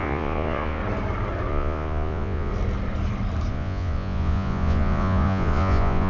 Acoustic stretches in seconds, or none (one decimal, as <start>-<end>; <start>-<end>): 0.8-1.5; 2.5-3.5